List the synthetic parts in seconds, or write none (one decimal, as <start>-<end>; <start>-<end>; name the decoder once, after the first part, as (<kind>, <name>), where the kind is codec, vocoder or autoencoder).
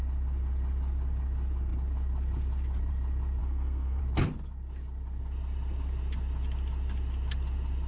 3.4-4.0 (codec, SNAC)